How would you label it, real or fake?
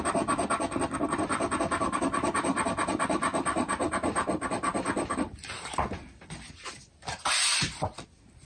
fake